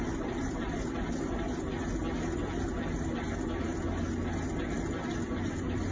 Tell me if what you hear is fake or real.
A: real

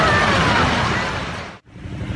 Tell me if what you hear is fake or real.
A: real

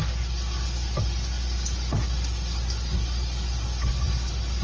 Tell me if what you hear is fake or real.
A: real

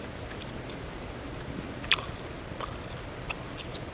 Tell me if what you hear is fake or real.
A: real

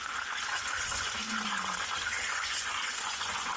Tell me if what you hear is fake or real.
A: fake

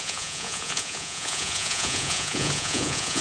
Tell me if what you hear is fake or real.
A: fake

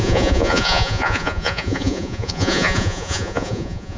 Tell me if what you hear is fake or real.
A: fake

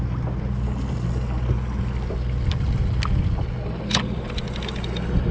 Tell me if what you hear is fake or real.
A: real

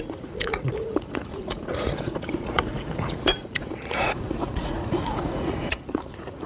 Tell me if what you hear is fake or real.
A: fake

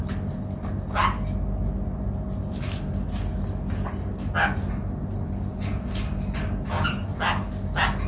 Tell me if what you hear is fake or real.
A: real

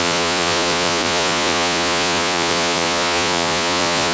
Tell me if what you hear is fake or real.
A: fake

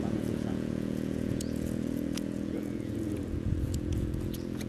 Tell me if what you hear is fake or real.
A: fake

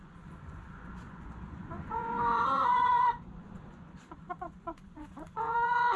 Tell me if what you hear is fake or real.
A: fake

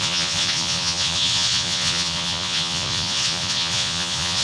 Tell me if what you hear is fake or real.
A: fake